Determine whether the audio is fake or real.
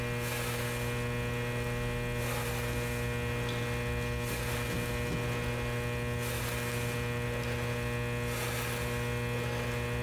real